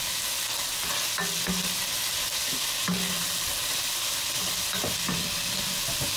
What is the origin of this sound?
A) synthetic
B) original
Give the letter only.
B